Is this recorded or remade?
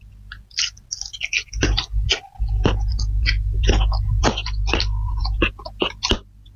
recorded